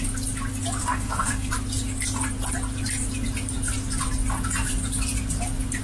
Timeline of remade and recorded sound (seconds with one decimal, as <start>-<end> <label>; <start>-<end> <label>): 0.0-0.8 recorded; 0.8-1.5 remade; 1.5-5.8 recorded